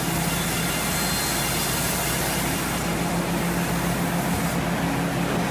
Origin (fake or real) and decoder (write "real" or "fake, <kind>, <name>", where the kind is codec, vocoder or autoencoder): real